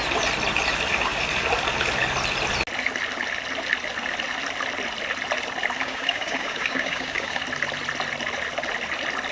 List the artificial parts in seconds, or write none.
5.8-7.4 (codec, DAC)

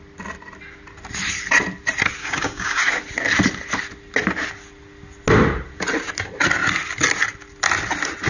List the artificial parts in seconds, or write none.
2.2-2.8 (codec, DAC)